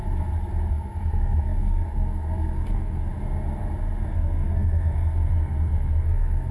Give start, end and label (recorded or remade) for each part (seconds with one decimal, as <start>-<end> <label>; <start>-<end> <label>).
0.0-0.7 recorded; 0.7-3.1 remade; 3.1-4.1 recorded; 4.1-6.5 remade